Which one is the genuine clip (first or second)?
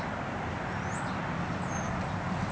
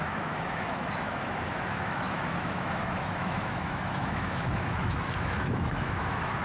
first